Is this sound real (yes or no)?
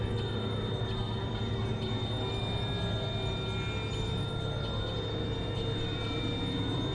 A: yes